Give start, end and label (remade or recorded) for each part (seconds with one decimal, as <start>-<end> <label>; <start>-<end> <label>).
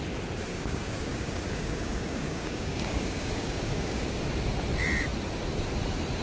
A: 0.0-0.5 recorded; 0.5-4.2 remade; 4.2-6.2 recorded